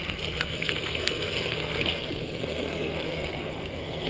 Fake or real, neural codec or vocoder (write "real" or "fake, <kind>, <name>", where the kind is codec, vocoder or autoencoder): fake, codec, SNAC